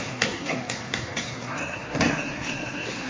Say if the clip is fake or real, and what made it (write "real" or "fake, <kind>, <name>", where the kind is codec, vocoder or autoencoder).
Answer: fake, codec, SNAC